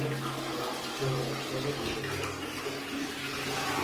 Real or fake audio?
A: real